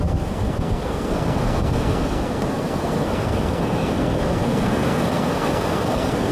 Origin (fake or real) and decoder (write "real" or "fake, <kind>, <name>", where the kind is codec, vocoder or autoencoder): fake, codec, SNAC